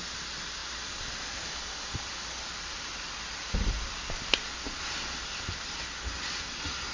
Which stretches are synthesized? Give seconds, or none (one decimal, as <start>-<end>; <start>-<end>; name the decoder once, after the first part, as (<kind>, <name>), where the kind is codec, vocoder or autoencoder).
0.6-4.2 (vocoder, BigVGAN v2)